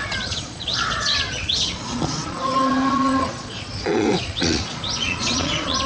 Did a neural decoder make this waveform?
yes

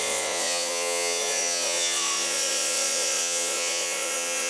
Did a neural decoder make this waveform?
yes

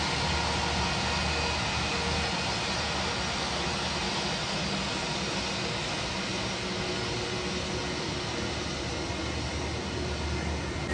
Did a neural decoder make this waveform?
no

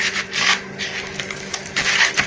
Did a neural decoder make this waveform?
no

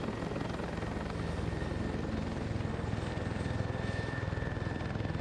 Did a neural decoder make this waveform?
no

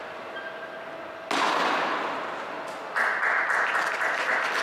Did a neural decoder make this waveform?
no